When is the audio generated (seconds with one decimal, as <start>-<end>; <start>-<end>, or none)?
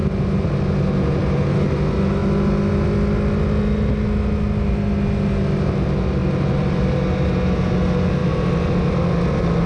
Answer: 6.2-6.8